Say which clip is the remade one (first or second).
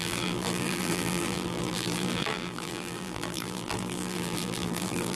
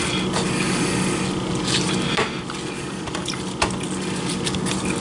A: first